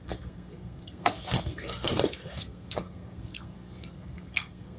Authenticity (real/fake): fake